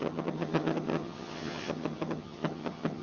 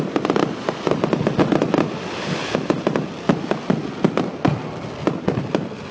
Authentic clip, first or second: second